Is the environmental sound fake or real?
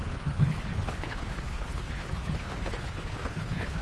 fake